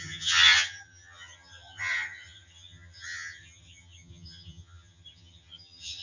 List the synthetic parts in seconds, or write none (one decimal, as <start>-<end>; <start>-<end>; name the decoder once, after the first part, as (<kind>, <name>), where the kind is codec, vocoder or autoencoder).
0.0-6.0 (vocoder, HiFi-GAN)